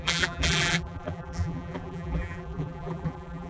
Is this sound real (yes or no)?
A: no